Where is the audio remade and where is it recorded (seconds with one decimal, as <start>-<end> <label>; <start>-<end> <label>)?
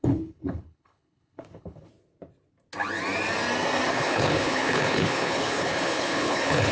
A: 0.0-1.9 remade; 1.9-3.9 recorded; 3.9-6.7 remade